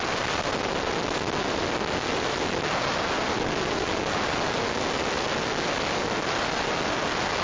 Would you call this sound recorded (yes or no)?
yes